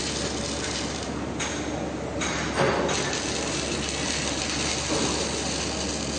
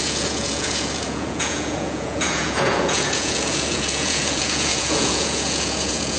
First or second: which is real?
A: first